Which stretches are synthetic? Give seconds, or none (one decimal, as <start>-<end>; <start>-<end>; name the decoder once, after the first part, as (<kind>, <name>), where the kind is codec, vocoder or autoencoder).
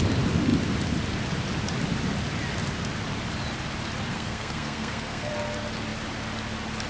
4.1-5.3 (codec, SNAC)